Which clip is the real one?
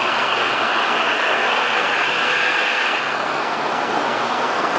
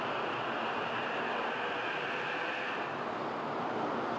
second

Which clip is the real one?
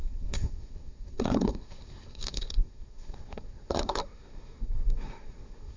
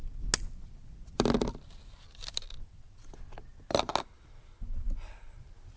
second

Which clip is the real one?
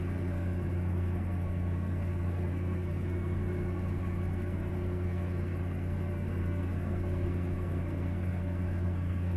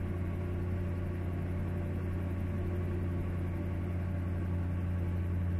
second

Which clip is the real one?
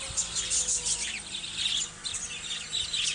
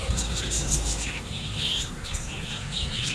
first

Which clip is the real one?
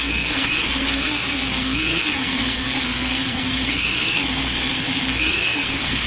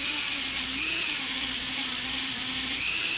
second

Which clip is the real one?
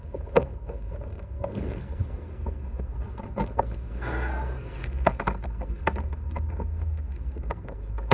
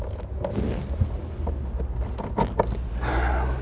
second